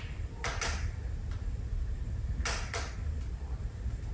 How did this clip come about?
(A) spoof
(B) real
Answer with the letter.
B